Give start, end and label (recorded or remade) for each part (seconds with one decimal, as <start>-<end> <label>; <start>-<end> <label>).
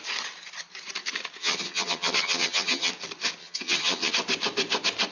0.0-1.4 recorded; 1.4-2.9 remade; 2.9-3.4 recorded; 3.4-4.1 remade; 4.1-5.1 recorded